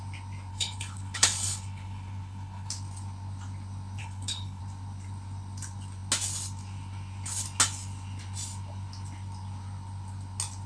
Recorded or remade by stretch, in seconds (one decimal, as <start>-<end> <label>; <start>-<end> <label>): 0.0-0.5 recorded; 0.5-2.7 remade; 2.7-4.0 recorded; 4.0-4.6 remade; 4.6-10.7 recorded